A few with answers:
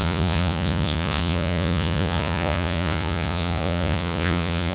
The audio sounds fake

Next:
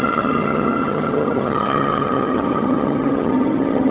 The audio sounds fake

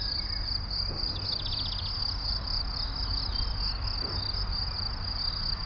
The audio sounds real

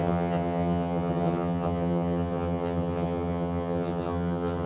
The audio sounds fake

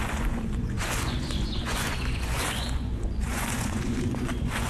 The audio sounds fake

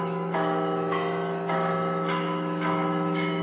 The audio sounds fake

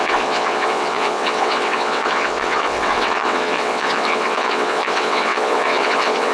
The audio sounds fake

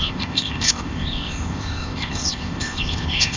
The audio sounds fake